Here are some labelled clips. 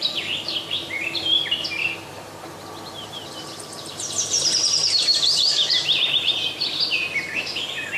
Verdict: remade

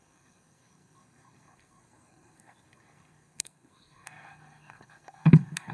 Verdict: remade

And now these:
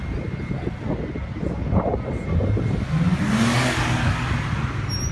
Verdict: recorded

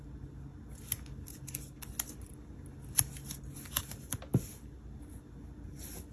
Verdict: recorded